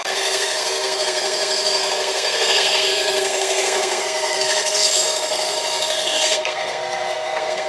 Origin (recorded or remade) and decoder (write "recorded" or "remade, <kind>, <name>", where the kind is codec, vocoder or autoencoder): remade, codec, SNAC